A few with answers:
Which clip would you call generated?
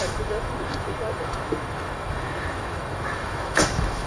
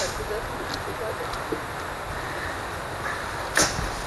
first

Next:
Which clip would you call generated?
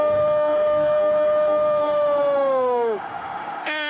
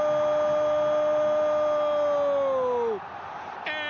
first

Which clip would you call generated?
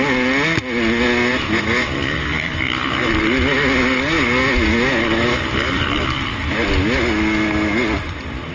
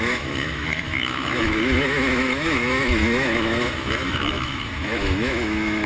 second